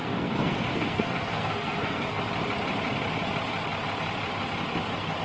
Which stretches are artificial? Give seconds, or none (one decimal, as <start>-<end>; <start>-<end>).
0.0-2.2